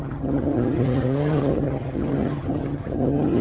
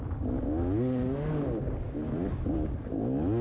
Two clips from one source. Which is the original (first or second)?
second